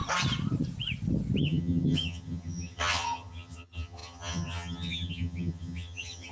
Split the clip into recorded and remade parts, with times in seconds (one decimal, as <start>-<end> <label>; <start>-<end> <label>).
0.0-1.4 recorded; 1.4-6.3 remade